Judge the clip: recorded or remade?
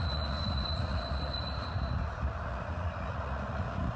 remade